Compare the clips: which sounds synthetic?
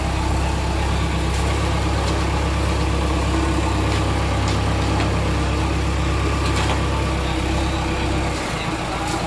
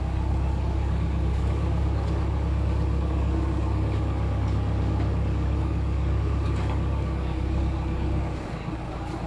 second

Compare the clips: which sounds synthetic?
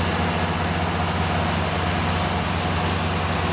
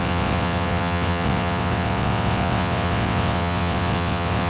second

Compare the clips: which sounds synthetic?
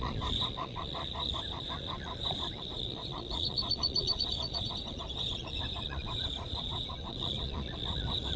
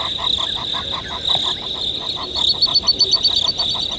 first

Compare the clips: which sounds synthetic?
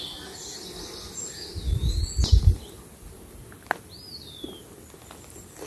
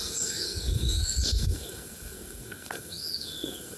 second